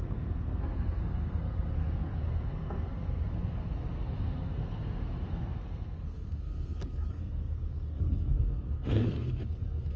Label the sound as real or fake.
fake